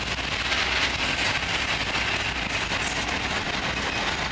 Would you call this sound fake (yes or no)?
no